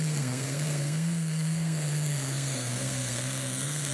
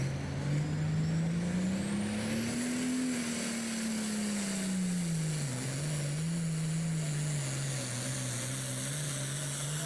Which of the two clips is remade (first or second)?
first